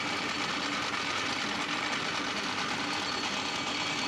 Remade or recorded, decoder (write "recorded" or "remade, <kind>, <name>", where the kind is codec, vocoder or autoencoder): recorded